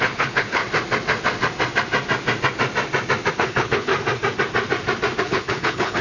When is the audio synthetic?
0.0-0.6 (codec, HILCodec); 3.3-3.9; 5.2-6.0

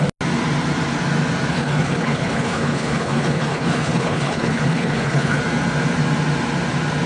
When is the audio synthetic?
1.5-5.4 (codec, HILCodec)

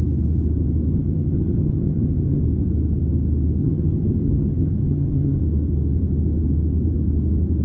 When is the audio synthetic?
0.9-2.4 (vocoder, HiFi-GAN); 3.6-5.4

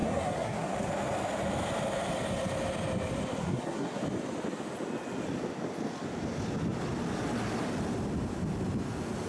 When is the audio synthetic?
0.0-0.9 (codec, SNAC); 3.4-4.0

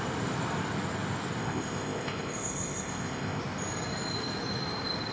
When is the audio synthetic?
1.4-3.4 (codec, ZipCodec)

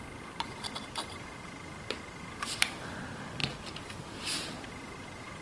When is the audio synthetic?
none